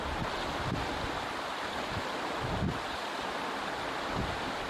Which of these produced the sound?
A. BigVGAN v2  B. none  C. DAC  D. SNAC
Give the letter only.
B